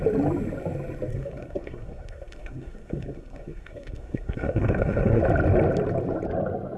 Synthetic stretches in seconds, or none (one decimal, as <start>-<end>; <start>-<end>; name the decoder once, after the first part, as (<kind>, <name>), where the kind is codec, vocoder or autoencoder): 1.1-5.2 (codec, SNAC)